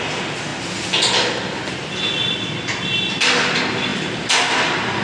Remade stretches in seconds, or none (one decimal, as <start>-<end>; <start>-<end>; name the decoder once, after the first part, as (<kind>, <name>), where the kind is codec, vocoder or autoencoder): none